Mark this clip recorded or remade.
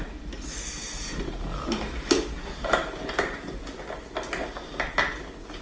recorded